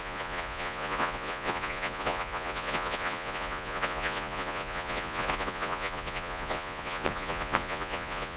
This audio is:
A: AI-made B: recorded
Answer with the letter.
A